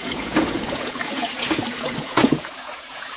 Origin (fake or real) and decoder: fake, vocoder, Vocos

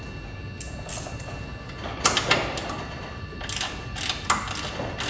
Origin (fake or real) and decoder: real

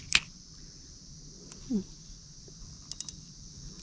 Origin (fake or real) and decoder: real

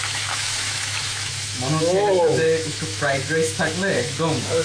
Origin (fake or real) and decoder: fake, autoencoder, DAC-VAE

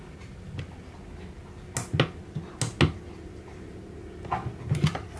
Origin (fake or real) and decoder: real